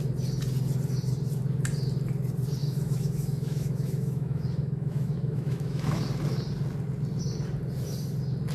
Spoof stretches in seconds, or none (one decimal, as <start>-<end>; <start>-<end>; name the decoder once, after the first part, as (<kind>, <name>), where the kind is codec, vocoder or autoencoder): 2.6-6.0 (autoencoder, DAC-VAE)